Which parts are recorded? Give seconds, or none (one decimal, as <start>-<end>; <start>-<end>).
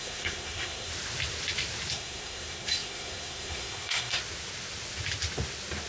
0.9-1.9; 4.2-5.9